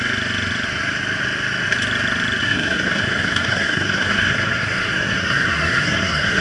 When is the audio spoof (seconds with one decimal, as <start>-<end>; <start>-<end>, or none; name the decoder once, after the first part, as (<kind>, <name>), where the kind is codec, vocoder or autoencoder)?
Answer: 2.4-6.4 (codec, SNAC)

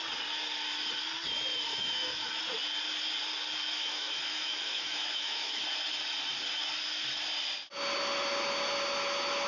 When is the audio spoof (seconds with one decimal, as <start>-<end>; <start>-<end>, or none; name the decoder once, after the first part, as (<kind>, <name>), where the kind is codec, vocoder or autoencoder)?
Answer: 1.7-2.4 (autoencoder, DAC-VAE); 3.8-5.6

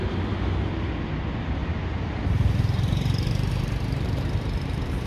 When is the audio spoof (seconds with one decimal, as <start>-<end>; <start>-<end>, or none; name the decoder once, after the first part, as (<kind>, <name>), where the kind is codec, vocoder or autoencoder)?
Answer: 1.6-5.1 (vocoder, BigVGAN v2)

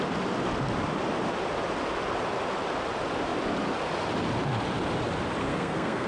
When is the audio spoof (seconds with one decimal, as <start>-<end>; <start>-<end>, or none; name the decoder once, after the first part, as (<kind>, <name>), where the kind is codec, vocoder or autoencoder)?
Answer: 5.4-6.1 (codec, SNAC)

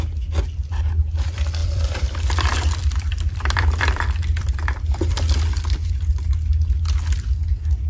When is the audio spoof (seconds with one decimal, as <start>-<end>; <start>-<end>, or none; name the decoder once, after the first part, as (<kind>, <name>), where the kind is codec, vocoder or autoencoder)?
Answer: 1.6-5.9 (vocoder, BigVGAN v2)